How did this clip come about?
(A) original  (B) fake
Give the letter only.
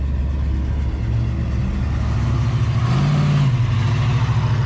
A